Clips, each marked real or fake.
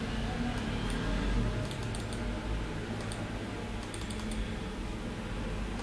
real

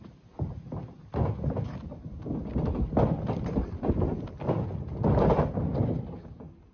real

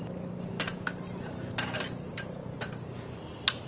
real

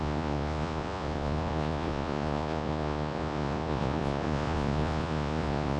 fake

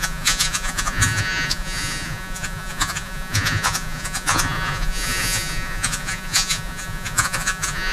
fake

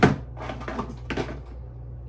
real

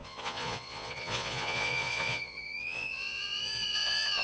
fake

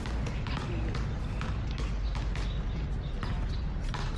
real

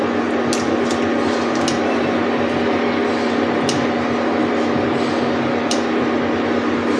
real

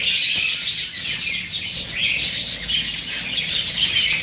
real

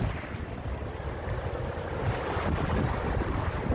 real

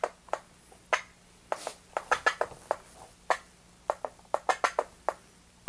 real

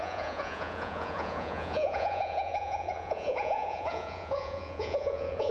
fake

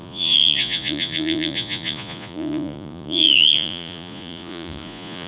fake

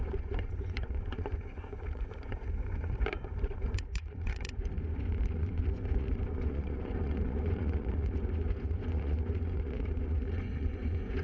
fake